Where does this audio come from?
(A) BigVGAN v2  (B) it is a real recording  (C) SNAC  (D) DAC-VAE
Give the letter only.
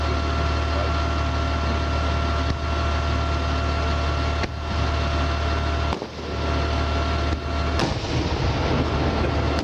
B